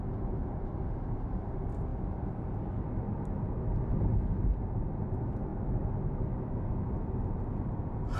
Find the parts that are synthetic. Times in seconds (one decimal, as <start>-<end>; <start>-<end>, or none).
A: none